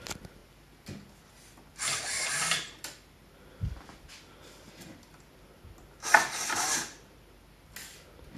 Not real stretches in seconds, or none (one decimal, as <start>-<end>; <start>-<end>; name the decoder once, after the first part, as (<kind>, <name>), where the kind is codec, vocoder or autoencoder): none